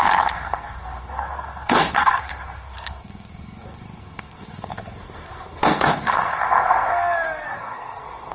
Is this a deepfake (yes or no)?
yes